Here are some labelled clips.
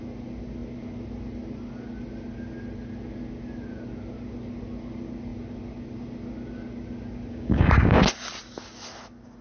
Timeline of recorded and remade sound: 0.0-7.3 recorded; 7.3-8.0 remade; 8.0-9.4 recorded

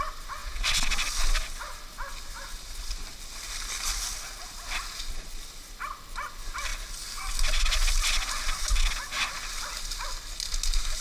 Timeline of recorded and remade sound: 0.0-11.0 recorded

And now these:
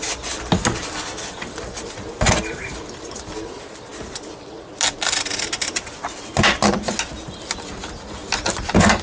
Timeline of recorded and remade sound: 0.0-9.0 recorded

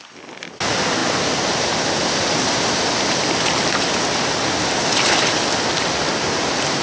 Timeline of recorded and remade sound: 0.0-6.8 recorded

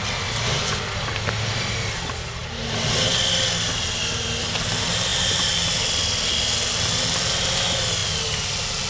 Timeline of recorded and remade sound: 0.0-8.9 recorded

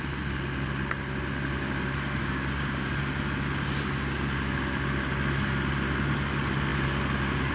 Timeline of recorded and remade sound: 0.0-2.2 recorded; 2.2-2.9 remade; 2.9-7.5 recorded

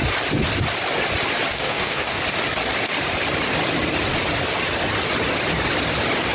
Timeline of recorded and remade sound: 0.0-1.5 recorded; 1.5-2.2 remade; 2.2-6.3 recorded